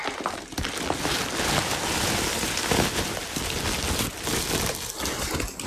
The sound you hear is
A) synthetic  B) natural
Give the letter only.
B